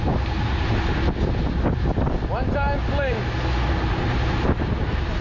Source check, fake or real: real